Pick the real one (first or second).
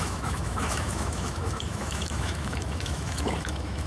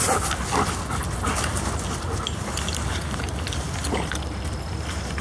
second